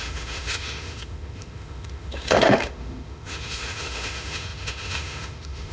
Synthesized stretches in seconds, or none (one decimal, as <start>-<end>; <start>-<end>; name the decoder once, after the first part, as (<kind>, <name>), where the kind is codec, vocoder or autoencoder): 0.0-5.7 (autoencoder, DAC-VAE)